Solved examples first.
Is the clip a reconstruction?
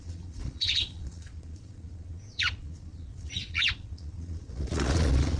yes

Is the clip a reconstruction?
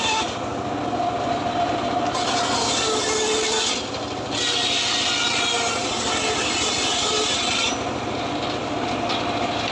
no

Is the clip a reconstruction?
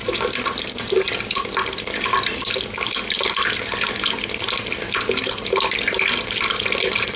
no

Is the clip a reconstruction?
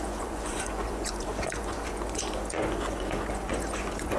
yes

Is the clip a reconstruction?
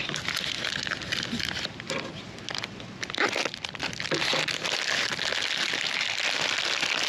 no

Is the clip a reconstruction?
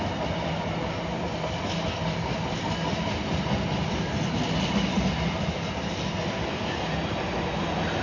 no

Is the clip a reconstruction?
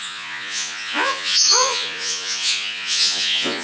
yes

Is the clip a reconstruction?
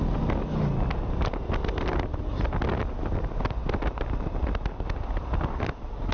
no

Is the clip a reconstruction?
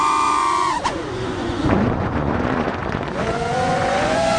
yes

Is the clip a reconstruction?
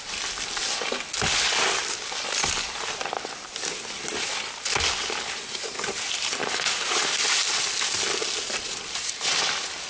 no